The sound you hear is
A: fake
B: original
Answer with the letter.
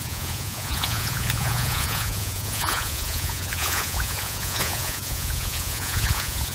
A